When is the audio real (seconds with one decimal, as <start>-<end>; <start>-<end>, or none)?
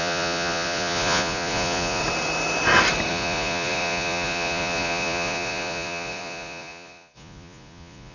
2.0-3.1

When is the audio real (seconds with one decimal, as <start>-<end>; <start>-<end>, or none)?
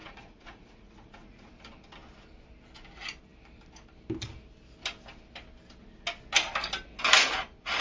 1.5-7.8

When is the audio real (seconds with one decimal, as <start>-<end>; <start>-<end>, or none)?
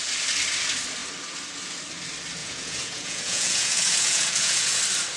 0.0-2.4; 4.8-5.2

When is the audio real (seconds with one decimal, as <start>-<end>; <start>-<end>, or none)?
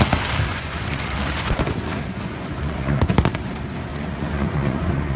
0.0-0.5; 3.1-3.9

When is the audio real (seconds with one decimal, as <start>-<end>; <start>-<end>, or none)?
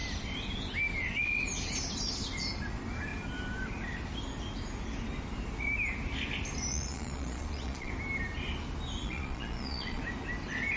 0.0-6.7; 7.9-9.0; 10.0-10.8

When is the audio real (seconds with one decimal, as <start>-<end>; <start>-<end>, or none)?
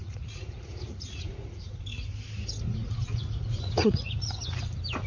1.8-2.8; 4.4-5.1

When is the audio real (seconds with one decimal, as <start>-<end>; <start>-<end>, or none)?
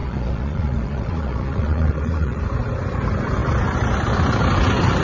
2.4-5.0